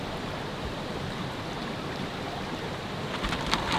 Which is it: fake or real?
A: fake